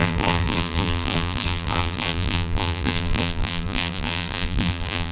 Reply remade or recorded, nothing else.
remade